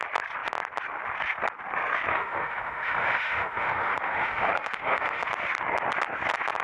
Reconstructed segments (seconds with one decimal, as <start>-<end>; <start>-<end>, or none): 2.1-5.3